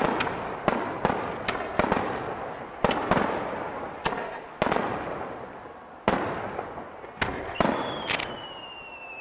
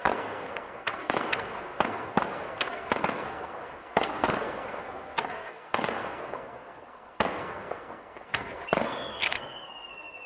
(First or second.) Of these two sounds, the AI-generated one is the second